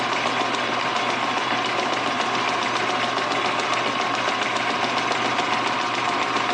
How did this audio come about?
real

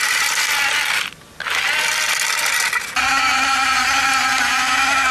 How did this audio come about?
real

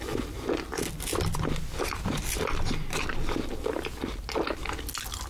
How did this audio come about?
real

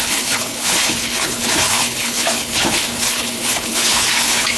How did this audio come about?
fake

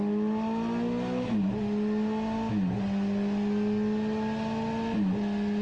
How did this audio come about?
real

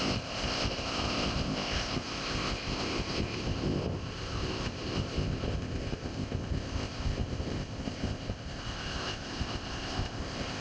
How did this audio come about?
fake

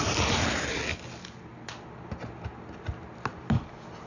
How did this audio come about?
real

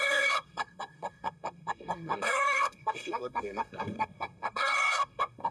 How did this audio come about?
fake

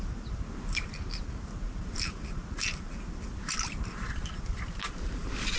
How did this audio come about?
real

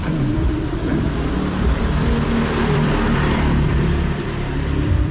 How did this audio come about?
fake